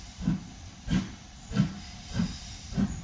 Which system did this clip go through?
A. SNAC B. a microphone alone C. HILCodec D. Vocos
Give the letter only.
B